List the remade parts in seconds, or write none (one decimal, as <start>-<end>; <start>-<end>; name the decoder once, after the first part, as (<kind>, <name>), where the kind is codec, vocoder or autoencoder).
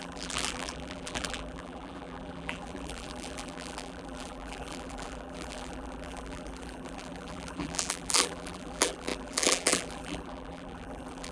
0.0-11.3 (vocoder, BigVGAN v2)